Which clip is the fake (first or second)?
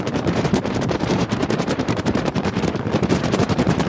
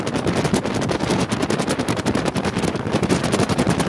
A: first